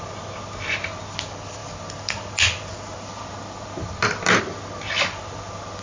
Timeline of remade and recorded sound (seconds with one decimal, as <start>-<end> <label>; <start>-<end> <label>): 0.0-5.8 recorded